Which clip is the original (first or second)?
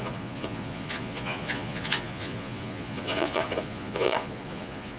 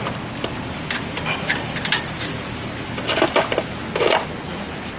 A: second